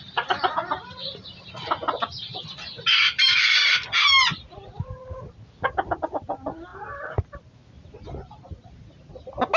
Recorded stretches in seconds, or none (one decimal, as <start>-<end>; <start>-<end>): 0.0-9.6